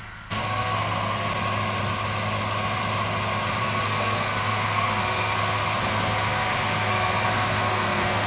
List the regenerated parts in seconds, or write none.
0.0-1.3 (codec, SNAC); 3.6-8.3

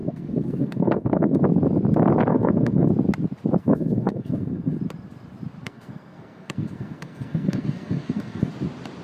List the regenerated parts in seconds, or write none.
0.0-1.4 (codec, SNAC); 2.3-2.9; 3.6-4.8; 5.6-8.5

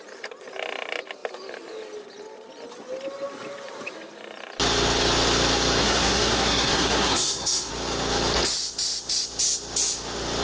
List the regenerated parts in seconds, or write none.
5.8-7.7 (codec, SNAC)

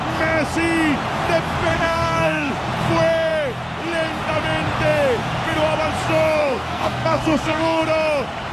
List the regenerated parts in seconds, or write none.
1.7-2.5 (codec, SNAC); 6.4-7.8

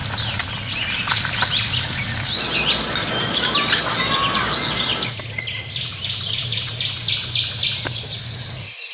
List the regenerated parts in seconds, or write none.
none